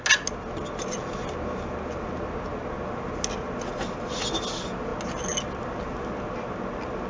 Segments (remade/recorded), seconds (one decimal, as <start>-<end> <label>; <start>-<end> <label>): 0.0-7.1 recorded